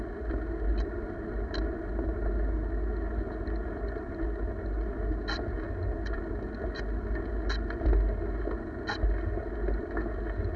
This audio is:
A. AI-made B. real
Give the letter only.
B